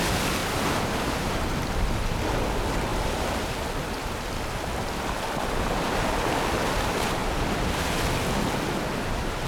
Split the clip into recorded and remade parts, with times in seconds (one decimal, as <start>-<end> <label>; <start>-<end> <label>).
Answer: 0.0-0.4 recorded; 0.4-1.5 remade; 1.5-9.5 recorded